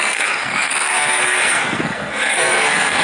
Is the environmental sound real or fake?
fake